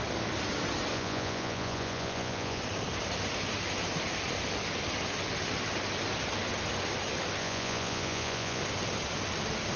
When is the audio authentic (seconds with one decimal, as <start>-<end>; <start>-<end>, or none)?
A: 0.0-0.9; 2.6-7.4; 8.6-9.8